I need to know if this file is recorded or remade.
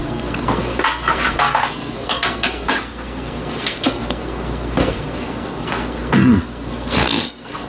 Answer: remade